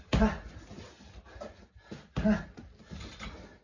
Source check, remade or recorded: recorded